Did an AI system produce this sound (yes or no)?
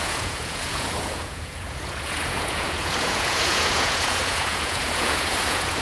yes